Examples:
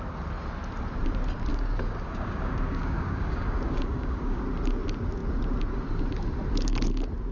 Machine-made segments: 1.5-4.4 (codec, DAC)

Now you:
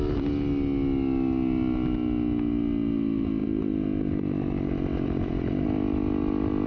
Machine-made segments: none

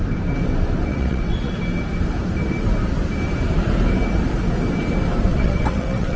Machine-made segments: 0.9-1.5 (vocoder, WaveNeXt); 5.3-6.2

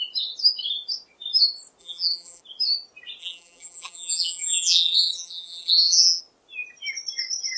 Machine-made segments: 1.8-2.4 (vocoder, BigVGAN v2); 3.2-6.2